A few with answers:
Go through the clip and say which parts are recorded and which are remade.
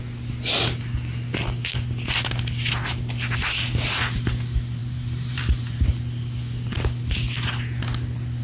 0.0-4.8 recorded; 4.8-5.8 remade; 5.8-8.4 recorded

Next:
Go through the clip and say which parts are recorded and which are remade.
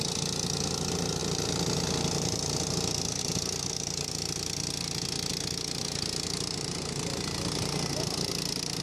0.0-8.8 recorded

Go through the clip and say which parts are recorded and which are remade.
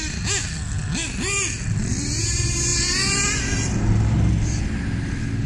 0.0-5.5 recorded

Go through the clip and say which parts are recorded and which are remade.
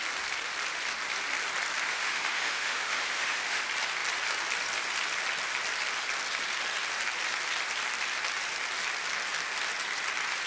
0.0-1.9 recorded; 1.9-3.6 remade; 3.6-10.5 recorded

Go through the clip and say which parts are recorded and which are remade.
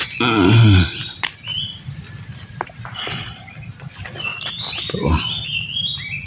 0.0-6.3 recorded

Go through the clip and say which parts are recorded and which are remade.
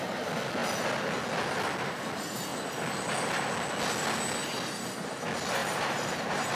0.0-5.6 recorded; 5.6-6.5 remade